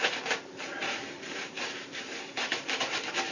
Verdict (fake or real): fake